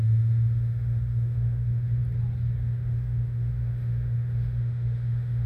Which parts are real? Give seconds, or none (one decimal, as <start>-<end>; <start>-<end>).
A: 2.0-2.6